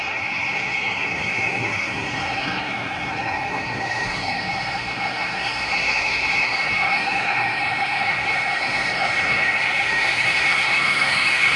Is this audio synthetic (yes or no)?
yes